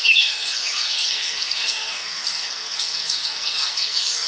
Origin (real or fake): fake